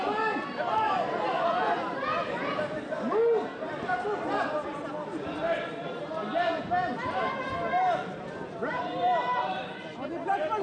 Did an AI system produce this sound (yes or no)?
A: no